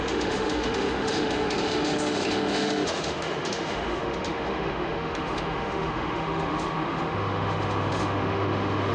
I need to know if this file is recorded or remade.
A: remade